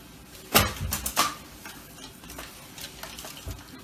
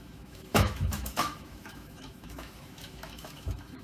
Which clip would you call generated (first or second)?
second